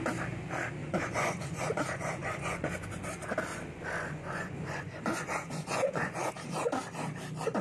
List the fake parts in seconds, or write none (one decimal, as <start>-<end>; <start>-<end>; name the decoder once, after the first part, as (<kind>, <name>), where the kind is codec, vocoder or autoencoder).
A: 0.8-3.1 (vocoder, Vocos); 3.5-6.3